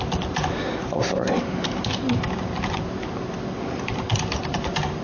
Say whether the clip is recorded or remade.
recorded